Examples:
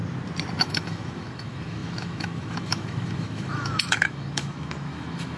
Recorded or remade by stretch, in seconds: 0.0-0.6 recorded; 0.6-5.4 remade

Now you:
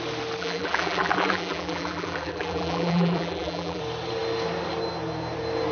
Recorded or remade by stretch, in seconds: 0.0-0.4 recorded; 0.4-3.8 remade; 3.8-5.7 recorded

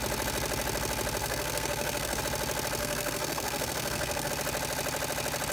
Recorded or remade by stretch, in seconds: 0.0-1.2 recorded; 1.2-2.2 remade; 2.2-2.8 recorded; 2.8-4.3 remade; 4.3-5.5 recorded

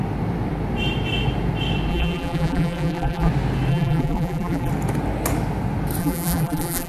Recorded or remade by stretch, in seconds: 0.0-1.9 recorded; 1.9-3.3 remade; 3.3-3.7 recorded; 3.7-4.7 remade; 4.7-6.0 recorded; 6.0-6.9 remade

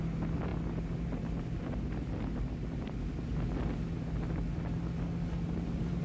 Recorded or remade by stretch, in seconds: 0.0-6.0 recorded

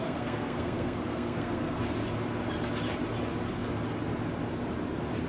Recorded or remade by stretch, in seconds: 0.0-1.8 remade; 1.8-5.3 recorded